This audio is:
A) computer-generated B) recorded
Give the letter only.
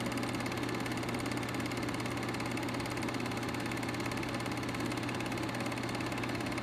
B